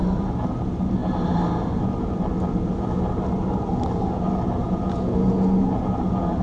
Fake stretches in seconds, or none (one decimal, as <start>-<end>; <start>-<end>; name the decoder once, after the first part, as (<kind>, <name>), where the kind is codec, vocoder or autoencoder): none